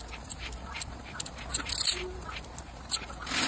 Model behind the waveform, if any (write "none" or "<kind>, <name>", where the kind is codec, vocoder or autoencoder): none